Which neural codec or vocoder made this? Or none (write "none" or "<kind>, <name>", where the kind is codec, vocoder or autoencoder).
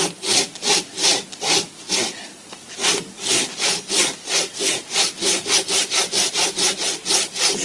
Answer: none